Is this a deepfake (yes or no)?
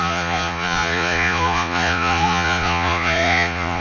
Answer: yes